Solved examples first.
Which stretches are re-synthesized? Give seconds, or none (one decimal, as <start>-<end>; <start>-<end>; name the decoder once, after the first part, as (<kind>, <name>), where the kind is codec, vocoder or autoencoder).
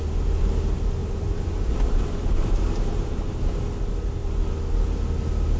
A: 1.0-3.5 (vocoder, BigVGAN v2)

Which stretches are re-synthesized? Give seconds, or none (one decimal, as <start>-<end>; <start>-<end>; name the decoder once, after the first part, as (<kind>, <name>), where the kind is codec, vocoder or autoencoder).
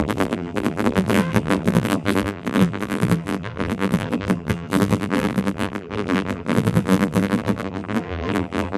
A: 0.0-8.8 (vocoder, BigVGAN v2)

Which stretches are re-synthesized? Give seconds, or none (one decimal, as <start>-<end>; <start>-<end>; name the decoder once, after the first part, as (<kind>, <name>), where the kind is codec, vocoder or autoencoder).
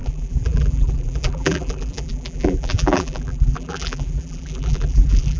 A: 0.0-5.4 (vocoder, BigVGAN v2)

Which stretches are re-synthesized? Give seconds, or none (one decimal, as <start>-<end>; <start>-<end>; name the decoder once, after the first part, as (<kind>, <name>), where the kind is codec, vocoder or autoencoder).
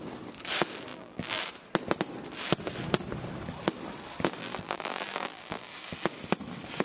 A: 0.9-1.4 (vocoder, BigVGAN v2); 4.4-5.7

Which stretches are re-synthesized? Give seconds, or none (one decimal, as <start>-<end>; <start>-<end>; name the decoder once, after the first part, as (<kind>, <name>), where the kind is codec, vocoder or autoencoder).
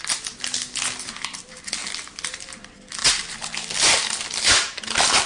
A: none